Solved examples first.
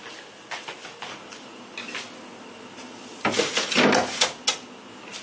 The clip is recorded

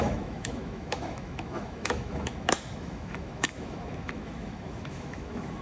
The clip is remade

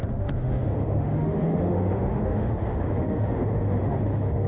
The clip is remade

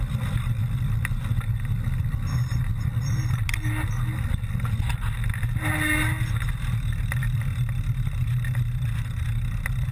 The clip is recorded